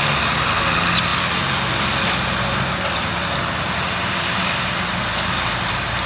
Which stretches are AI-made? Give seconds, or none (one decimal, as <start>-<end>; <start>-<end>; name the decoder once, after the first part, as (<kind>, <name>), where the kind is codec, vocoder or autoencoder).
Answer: none